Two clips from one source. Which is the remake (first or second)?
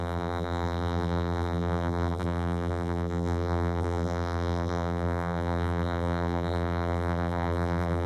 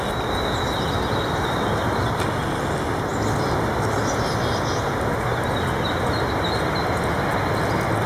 first